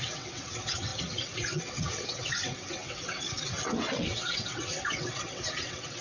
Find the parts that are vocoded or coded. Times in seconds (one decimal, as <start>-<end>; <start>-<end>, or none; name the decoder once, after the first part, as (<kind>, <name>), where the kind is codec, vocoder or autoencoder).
0.0-6.0 (vocoder, WaveNeXt)